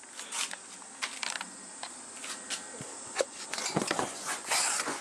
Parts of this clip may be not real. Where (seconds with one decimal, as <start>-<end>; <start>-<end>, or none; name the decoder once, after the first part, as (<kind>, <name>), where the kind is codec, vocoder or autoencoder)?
3.0-5.0 (vocoder, Vocos)